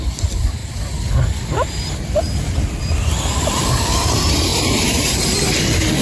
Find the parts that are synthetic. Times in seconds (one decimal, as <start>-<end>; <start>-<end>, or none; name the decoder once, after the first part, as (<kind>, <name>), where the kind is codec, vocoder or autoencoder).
none